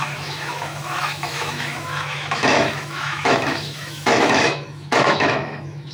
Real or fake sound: fake